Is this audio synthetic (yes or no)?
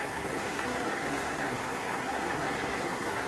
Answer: yes